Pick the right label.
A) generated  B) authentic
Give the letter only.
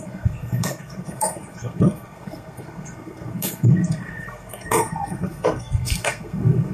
A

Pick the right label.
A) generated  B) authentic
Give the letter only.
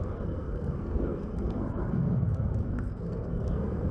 A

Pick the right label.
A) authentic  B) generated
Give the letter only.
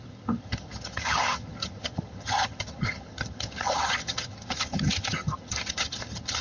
B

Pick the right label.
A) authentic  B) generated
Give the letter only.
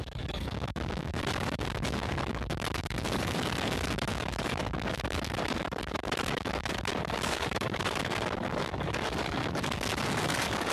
B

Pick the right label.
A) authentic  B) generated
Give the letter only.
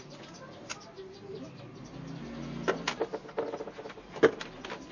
A